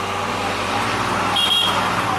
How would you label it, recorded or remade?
remade